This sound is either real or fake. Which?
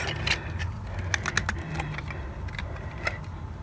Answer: real